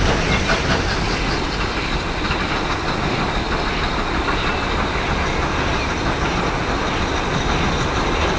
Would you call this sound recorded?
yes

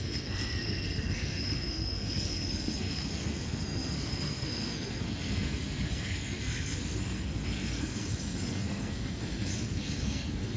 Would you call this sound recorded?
no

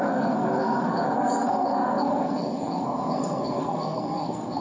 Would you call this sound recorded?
no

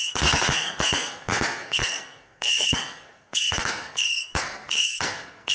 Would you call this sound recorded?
no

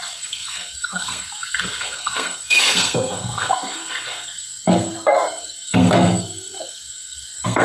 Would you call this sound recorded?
no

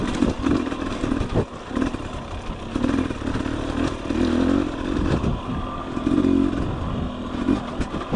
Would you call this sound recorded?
yes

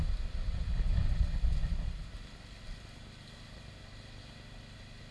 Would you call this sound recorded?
yes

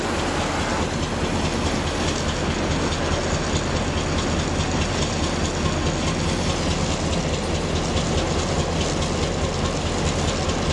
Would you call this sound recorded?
yes